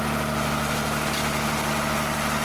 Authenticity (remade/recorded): recorded